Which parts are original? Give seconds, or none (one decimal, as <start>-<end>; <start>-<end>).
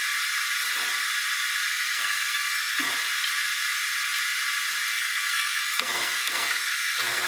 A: 0.0-1.7; 2.9-4.9